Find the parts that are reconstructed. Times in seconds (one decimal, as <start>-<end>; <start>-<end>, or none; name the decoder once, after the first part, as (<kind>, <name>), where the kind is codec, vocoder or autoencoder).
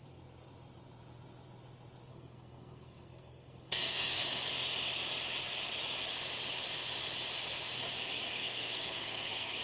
2.1-4.3 (codec, SNAC); 8.3-9.6